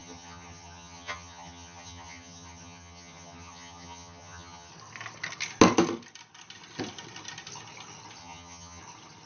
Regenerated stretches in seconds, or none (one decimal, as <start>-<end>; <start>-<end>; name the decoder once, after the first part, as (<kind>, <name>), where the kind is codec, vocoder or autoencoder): 0.0-4.7 (vocoder, HiFi-GAN); 8.2-8.8